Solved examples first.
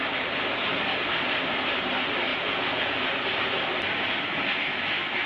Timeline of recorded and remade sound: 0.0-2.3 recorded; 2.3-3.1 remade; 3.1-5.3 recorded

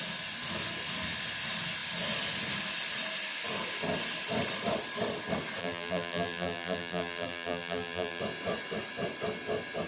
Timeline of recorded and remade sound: 0.0-5.6 recorded; 5.6-8.2 remade; 8.2-9.9 recorded

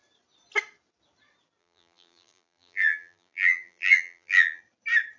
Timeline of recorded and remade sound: 0.0-1.6 recorded; 1.6-4.6 remade; 4.6-5.2 recorded

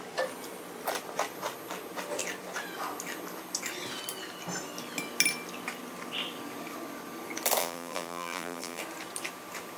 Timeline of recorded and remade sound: 0.0-7.6 recorded; 7.6-8.8 remade; 8.8-9.8 recorded

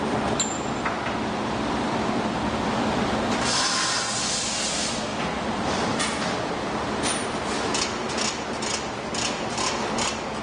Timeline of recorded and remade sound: 0.0-5.1 recorded; 5.1-7.8 remade; 7.8-10.4 recorded

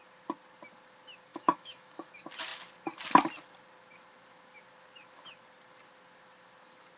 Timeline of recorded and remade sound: 0.0-1.3 recorded; 1.3-2.1 remade; 2.1-7.0 recorded

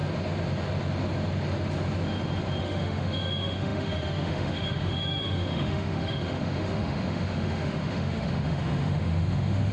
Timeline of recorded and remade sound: 0.0-2.6 recorded; 2.6-9.7 remade

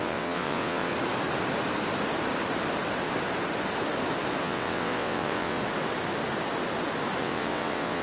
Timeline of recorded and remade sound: 0.0-0.9 remade; 0.9-4.4 recorded; 4.4-5.6 remade; 5.6-7.2 recorded; 7.2-8.0 remade